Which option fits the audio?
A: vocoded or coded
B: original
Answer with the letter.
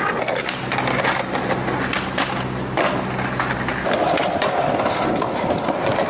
B